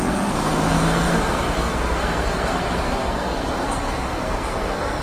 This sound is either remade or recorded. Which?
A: remade